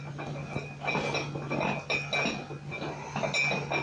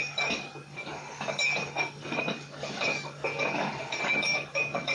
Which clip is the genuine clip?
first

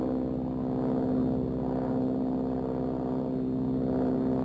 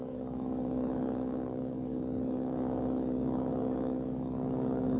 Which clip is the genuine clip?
first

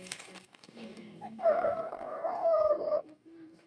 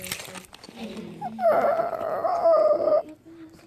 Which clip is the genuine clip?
second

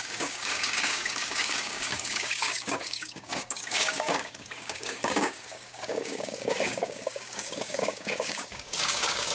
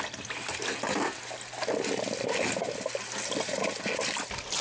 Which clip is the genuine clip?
second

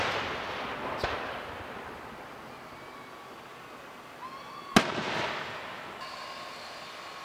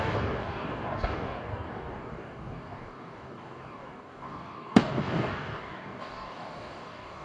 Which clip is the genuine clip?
first